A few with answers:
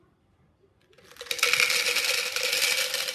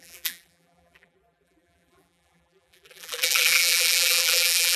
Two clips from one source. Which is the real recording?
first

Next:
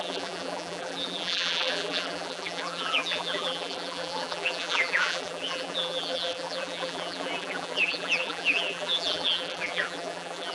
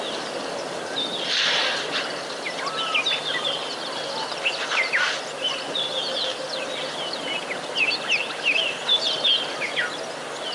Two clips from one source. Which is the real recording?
second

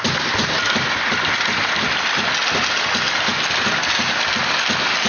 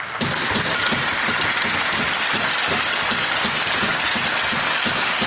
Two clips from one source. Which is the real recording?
first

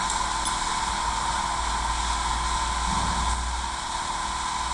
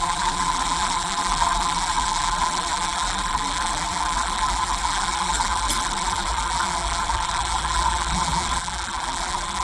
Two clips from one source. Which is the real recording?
first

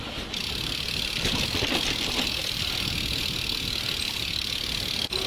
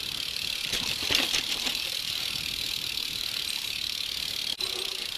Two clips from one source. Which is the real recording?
first